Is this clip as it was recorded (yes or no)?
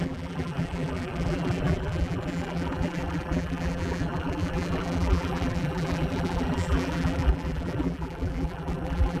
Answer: no